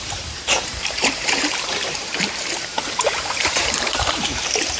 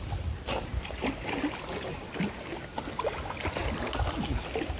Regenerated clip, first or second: first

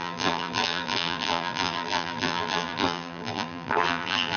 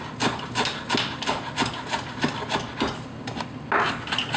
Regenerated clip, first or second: first